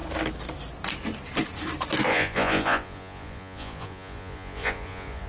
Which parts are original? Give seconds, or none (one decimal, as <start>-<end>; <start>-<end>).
0.0-2.1